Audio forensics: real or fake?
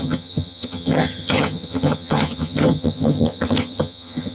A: fake